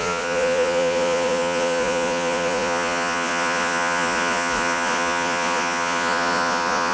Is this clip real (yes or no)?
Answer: no